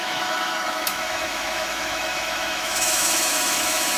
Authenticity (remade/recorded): remade